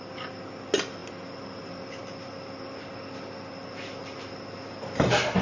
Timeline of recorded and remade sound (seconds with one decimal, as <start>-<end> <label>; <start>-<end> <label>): 0.0-5.4 recorded